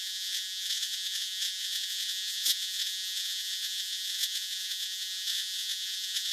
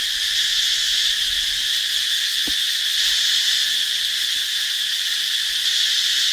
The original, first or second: second